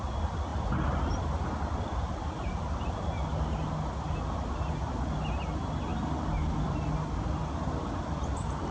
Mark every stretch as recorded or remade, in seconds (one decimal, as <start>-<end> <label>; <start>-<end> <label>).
0.0-8.7 recorded